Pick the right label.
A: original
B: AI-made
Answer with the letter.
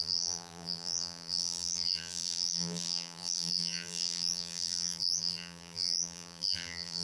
B